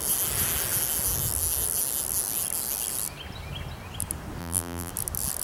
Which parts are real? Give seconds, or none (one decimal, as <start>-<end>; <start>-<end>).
0.0-4.4; 4.9-5.4